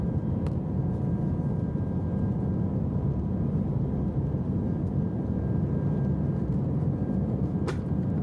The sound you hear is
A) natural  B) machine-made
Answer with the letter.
A